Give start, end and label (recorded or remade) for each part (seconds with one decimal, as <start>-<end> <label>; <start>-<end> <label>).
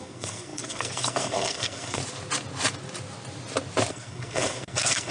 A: 0.0-2.0 remade; 2.0-3.9 recorded; 3.9-5.1 remade